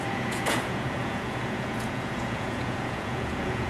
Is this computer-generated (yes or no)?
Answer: yes